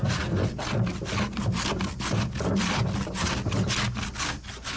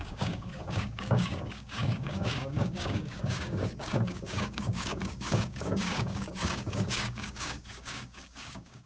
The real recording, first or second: first